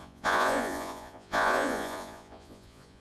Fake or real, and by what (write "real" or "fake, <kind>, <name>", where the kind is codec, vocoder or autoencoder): fake, vocoder, Vocos